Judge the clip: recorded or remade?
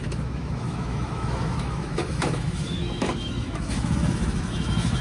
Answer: remade